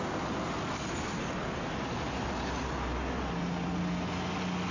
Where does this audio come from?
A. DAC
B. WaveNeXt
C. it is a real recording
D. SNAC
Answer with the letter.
C